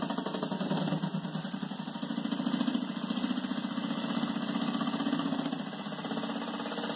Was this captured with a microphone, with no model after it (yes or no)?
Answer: yes